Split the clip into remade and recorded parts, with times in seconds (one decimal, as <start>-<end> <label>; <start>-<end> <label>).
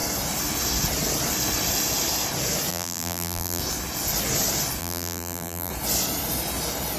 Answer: 0.0-2.7 recorded; 2.7-3.6 remade; 3.6-4.8 recorded; 4.8-5.7 remade; 5.7-7.0 recorded